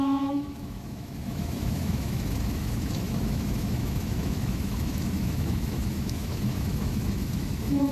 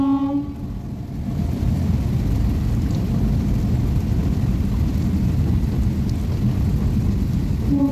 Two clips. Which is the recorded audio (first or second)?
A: second